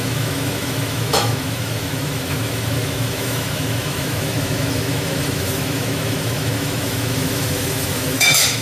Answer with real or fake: fake